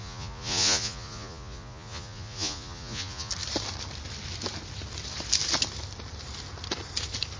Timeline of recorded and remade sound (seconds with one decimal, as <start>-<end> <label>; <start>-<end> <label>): 0.0-3.3 remade; 3.3-7.4 recorded